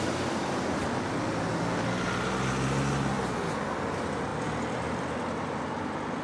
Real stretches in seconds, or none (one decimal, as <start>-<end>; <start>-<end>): 0.0-6.2